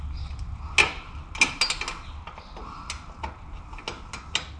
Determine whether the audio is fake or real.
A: real